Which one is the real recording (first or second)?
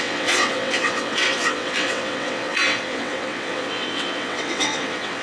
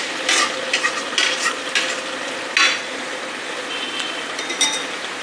second